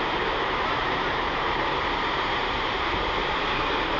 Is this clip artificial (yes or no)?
yes